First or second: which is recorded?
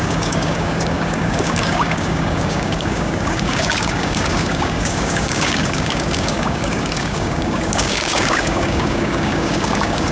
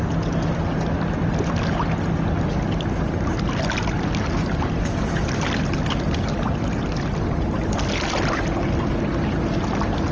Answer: second